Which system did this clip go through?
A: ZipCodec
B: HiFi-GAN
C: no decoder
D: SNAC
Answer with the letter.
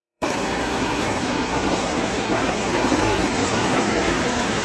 D